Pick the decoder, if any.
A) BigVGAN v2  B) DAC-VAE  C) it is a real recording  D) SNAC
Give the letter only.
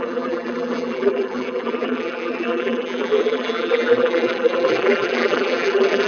A